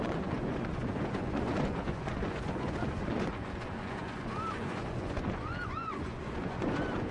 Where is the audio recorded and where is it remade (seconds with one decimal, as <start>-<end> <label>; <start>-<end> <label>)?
0.0-7.1 remade